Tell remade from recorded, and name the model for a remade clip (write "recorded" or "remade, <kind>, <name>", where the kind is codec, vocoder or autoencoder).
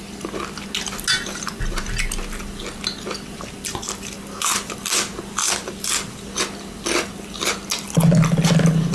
recorded